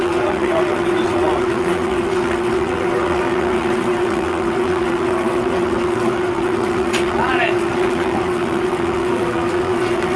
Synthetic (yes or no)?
yes